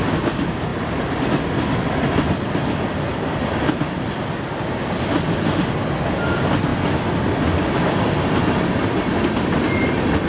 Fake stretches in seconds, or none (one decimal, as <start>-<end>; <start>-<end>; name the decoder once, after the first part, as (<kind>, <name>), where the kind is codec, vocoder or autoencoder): 0.7-4.2 (vocoder, BigVGAN v2)